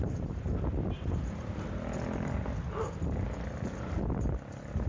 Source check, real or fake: real